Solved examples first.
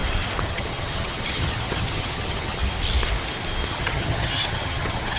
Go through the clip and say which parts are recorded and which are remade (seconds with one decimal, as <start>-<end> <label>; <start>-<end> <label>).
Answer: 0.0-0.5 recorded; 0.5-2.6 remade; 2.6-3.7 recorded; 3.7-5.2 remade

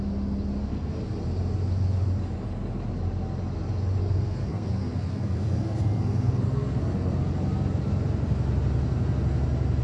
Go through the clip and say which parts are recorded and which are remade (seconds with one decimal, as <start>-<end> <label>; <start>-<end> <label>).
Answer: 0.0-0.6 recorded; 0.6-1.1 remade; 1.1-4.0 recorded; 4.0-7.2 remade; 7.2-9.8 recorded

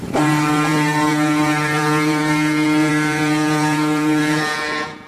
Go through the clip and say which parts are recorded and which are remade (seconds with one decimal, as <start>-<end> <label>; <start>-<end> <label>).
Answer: 0.0-5.1 remade